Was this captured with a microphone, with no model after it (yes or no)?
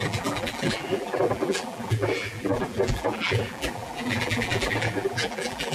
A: no